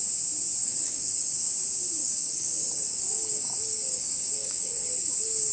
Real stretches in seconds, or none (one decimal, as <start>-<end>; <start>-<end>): 0.0-0.6; 1.5-2.0